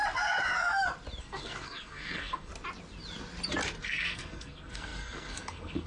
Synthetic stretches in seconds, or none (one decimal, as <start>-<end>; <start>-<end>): 1.2-2.5; 3.8-5.9